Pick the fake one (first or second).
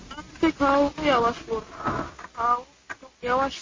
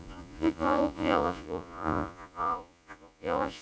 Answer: second